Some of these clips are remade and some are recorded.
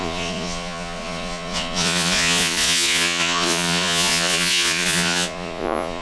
remade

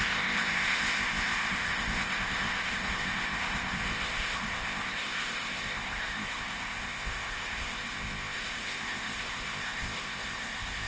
remade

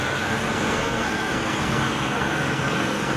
remade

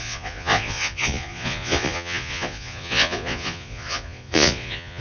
remade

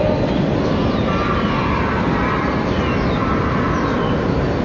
recorded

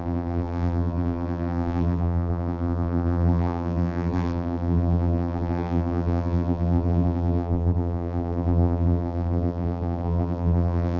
remade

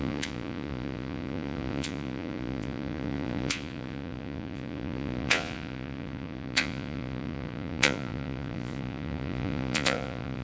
remade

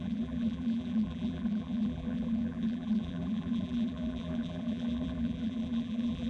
remade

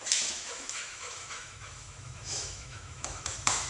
remade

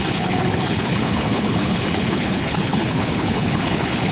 remade